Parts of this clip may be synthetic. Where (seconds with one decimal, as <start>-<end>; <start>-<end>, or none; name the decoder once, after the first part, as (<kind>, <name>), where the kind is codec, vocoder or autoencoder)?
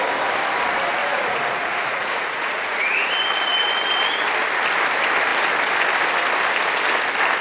1.0-3.1 (vocoder, Vocos)